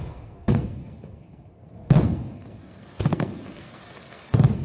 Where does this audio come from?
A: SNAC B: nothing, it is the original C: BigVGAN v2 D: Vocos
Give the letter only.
A